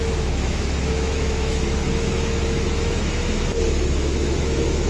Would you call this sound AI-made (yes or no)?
yes